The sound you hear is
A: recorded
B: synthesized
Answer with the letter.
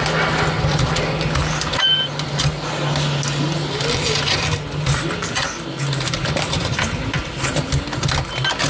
A